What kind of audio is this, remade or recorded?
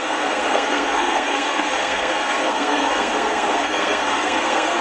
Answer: remade